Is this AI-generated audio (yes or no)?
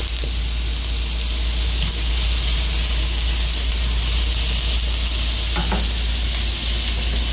no